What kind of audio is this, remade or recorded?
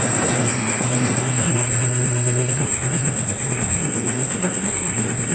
remade